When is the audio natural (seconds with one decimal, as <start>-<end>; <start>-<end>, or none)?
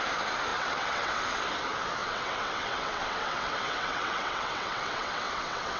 0.0-0.5; 1.2-2.0